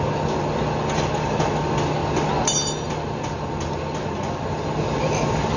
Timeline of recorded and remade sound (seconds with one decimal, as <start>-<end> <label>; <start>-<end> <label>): 0.0-5.6 recorded

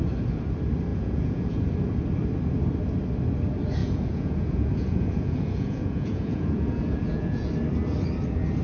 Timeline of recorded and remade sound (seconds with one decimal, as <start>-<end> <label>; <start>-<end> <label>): 0.0-0.9 recorded; 0.9-1.7 remade; 1.7-3.8 recorded; 3.8-7.5 remade; 7.5-8.6 recorded

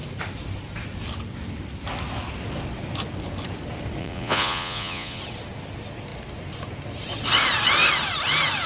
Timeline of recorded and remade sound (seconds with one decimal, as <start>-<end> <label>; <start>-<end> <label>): 0.0-4.0 recorded; 4.0-5.2 remade; 5.2-8.7 recorded

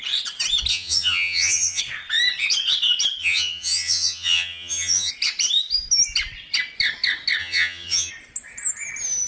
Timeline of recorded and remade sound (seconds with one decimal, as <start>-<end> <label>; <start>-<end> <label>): 0.0-0.7 recorded; 0.7-1.8 remade; 1.8-3.2 recorded; 3.2-5.1 remade; 5.1-7.4 recorded; 7.4-8.1 remade; 8.1-9.3 recorded